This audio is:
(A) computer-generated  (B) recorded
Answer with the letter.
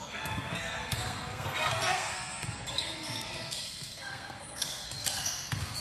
A